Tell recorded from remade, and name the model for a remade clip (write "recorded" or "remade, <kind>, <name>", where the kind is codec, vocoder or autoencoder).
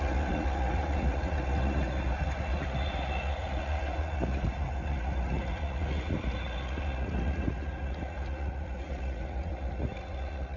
remade, vocoder, Vocos